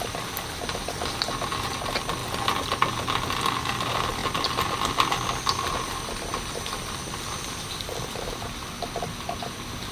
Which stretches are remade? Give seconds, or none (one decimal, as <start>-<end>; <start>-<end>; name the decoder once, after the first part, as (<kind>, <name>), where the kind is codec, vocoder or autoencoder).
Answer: none